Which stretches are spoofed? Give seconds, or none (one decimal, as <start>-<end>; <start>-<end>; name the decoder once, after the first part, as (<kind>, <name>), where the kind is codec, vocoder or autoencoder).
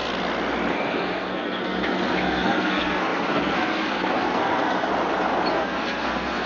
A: 0.7-4.9 (codec, SNAC); 5.5-6.5